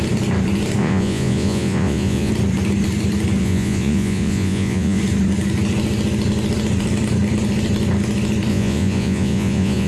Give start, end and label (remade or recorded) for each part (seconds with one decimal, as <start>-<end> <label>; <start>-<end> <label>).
0.0-0.8 recorded; 0.8-2.3 remade; 2.3-3.4 recorded; 3.4-5.0 remade; 5.0-8.5 recorded; 8.5-9.9 remade